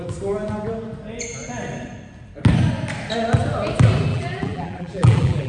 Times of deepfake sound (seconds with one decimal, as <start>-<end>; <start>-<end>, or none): 4.1-5.5